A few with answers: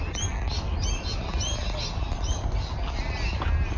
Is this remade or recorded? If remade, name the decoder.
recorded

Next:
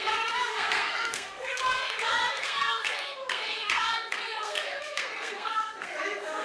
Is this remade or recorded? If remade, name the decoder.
remade, codec, SNAC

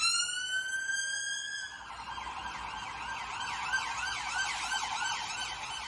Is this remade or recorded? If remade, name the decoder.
recorded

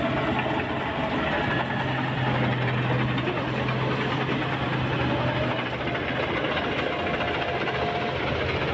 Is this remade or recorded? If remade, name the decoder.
recorded